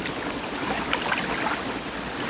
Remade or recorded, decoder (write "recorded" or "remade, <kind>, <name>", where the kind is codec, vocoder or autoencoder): recorded